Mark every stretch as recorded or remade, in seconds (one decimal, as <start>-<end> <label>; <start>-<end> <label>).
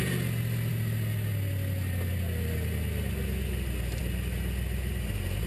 0.0-5.5 recorded